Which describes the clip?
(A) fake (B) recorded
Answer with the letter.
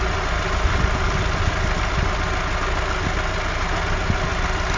B